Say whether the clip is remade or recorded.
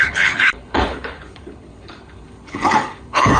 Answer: remade